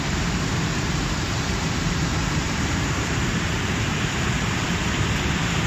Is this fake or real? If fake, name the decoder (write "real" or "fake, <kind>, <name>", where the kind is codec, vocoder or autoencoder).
fake, vocoder, BigVGAN v2